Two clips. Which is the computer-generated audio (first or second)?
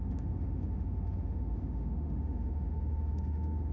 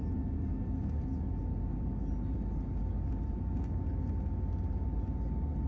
first